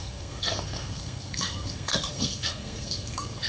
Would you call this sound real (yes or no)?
no